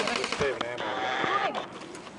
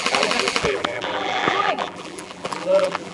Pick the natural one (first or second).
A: first